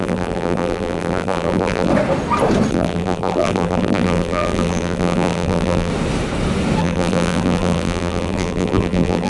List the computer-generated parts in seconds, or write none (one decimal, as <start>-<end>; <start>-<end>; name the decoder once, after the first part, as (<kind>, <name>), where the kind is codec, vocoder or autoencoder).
0.0-1.9 (vocoder, BigVGAN v2); 2.7-5.9; 6.8-9.3